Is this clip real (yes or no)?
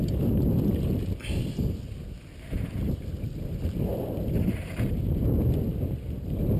yes